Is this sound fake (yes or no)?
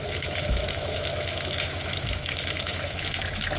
yes